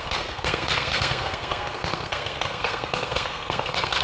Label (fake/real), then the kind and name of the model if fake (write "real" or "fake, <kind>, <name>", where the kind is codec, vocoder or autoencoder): fake, codec, SNAC